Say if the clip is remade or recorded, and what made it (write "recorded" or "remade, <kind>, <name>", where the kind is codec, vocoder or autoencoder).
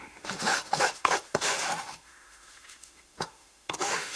remade, autoencoder, DAC-VAE